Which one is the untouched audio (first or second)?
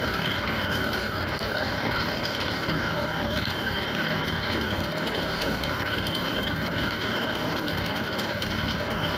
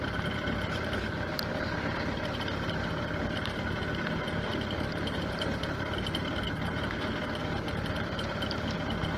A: second